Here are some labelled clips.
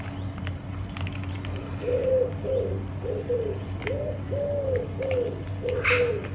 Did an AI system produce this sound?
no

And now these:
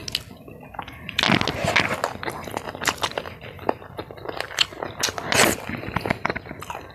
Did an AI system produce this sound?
no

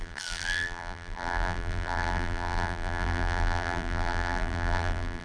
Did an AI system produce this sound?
yes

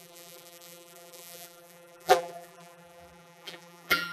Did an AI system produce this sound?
yes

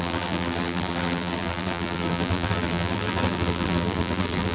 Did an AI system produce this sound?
yes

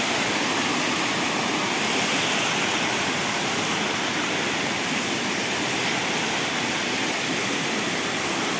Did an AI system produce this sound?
no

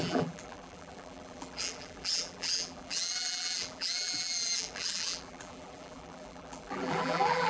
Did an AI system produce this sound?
yes